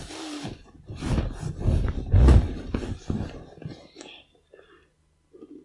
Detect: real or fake real